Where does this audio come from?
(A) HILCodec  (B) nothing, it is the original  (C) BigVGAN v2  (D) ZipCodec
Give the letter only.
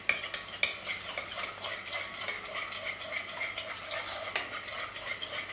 B